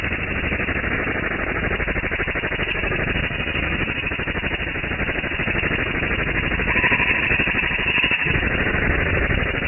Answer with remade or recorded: remade